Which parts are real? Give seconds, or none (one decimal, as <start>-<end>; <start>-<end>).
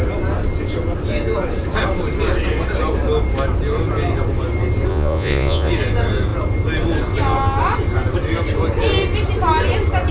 0.0-4.9; 5.7-10.1